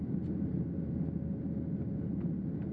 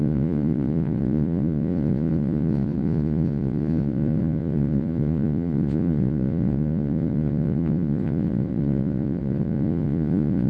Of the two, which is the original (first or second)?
first